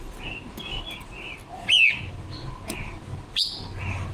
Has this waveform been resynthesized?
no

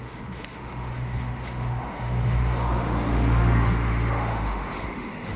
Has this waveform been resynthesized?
yes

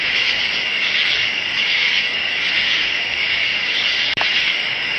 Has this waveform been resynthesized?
yes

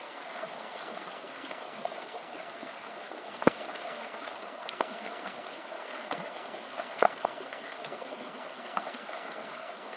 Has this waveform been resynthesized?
yes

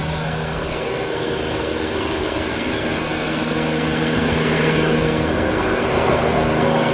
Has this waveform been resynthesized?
yes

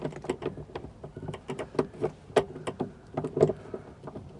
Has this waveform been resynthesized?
no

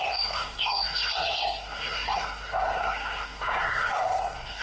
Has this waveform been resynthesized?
yes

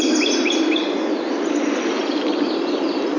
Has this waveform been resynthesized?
no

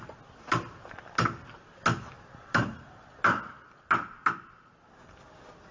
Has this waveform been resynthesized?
no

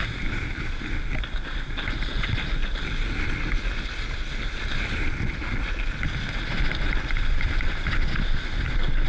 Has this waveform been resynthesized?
no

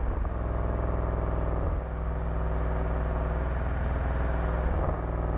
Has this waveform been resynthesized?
no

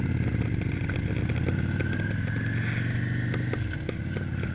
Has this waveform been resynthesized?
no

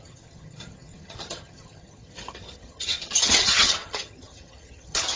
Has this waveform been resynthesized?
yes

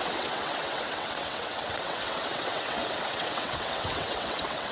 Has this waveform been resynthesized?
yes